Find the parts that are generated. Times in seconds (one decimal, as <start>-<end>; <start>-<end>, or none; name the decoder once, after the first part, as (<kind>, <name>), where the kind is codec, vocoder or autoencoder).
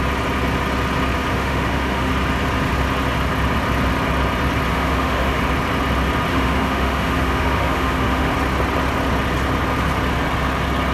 1.3-2.1 (autoencoder, DAC-VAE); 4.7-5.4; 6.3-8.3